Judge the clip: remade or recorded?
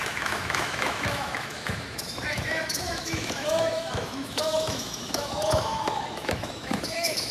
remade